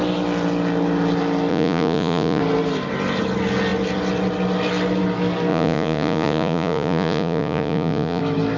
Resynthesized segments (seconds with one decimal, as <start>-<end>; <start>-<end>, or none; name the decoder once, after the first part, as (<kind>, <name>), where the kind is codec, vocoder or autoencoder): 1.5-2.4 (vocoder, Vocos); 5.5-8.2